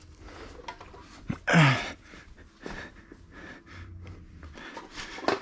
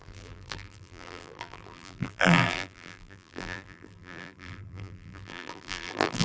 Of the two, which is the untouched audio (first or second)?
first